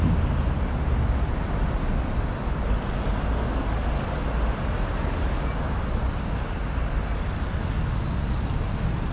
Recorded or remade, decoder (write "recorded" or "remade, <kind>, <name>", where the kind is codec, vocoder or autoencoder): recorded